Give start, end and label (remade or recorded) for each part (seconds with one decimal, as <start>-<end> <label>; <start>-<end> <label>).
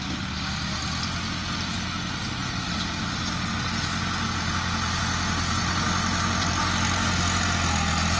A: 0.0-8.2 recorded